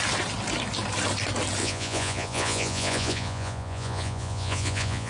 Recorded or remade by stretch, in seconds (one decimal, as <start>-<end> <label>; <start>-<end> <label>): 0.0-1.6 recorded; 1.6-5.1 remade